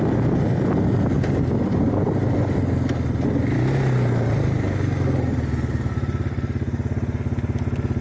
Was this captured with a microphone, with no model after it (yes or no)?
yes